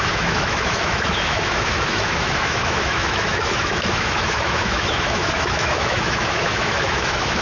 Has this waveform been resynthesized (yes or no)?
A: yes